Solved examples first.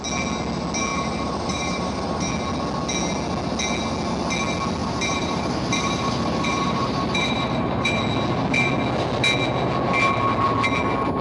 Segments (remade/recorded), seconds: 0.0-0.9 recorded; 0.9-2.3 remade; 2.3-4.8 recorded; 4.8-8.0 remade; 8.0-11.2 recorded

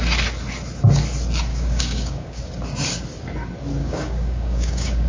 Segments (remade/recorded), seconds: 0.0-1.5 recorded; 1.5-2.4 remade; 2.4-3.8 recorded; 3.8-5.1 remade

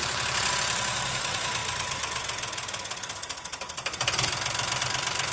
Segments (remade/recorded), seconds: 0.0-0.5 remade; 0.5-5.3 recorded

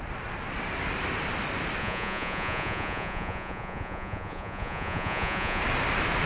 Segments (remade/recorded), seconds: 0.0-1.8 recorded; 1.8-5.6 remade; 5.6-6.3 recorded

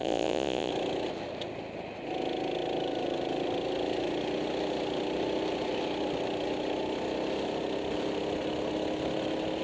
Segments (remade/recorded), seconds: 0.0-0.7 remade; 0.7-9.6 recorded

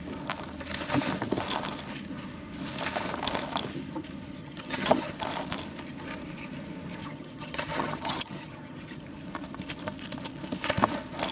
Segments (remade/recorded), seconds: 0.0-4.4 recorded; 4.4-5.1 remade; 5.1-7.0 recorded; 7.0-9.0 remade; 9.0-11.3 recorded

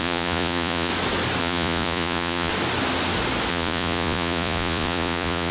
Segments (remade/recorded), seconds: 0.0-0.9 remade; 0.9-1.4 recorded; 1.4-2.5 remade; 2.5-3.5 recorded; 3.5-5.5 remade